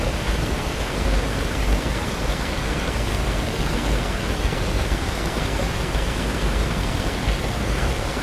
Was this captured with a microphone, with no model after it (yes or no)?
no